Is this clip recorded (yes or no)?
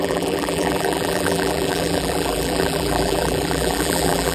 no